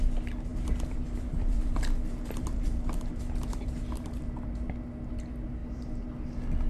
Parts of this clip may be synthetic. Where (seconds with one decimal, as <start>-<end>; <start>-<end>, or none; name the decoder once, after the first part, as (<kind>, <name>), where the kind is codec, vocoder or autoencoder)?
0.5-4.5 (vocoder, BigVGAN v2); 5.6-6.1